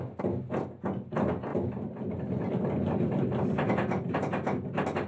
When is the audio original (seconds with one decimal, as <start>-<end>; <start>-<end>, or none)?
0.0-5.1